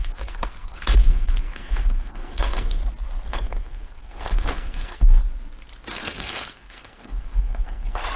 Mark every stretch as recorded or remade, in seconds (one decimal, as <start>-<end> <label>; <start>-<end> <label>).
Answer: 0.0-2.8 remade; 2.8-3.3 recorded; 3.3-5.2 remade; 5.2-5.9 recorded; 5.9-8.2 remade